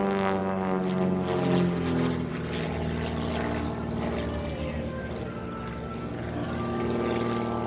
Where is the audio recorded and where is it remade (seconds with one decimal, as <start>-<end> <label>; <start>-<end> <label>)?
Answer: 0.0-7.7 recorded